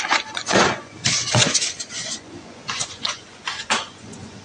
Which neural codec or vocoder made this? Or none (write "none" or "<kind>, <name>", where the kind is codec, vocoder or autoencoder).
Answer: vocoder, Vocos